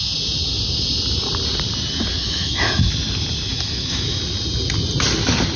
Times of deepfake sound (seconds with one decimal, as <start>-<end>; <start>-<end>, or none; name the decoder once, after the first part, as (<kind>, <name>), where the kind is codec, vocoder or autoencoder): 2.2-2.9 (autoencoder, DAC-VAE); 3.5-4.2